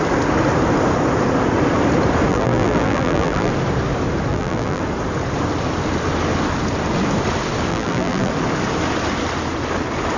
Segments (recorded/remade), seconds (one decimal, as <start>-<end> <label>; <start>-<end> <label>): 0.0-2.3 recorded; 2.3-3.5 remade; 3.5-4.3 recorded; 4.3-4.8 remade; 4.8-7.7 recorded; 7.7-8.3 remade; 8.3-10.2 recorded